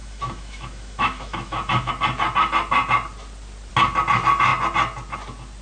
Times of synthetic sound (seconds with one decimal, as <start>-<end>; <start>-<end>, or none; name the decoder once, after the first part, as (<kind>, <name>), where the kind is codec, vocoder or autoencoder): 0.0-1.9 (autoencoder, DAC-VAE)